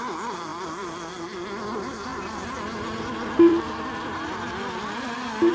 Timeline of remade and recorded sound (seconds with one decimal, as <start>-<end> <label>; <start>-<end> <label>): 0.0-0.5 recorded; 0.5-1.1 remade; 1.1-3.5 recorded; 3.5-5.5 remade